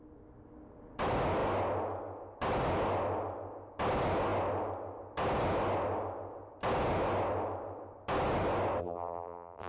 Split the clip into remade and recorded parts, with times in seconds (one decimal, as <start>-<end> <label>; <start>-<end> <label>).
0.0-8.8 recorded; 8.8-9.7 remade